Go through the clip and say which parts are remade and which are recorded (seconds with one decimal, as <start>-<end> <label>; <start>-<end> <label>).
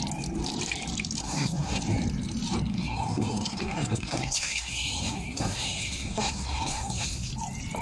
0.0-1.2 recorded; 1.2-1.8 remade; 1.8-2.7 recorded; 2.7-7.3 remade; 7.3-7.8 recorded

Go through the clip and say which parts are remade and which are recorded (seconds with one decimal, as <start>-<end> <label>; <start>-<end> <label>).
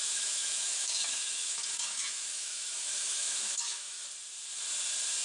0.0-4.0 remade; 4.0-5.2 recorded